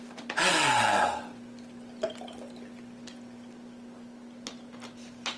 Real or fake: real